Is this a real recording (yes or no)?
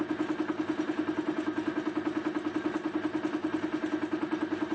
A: yes